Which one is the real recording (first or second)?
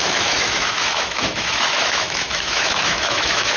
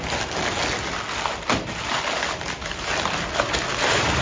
second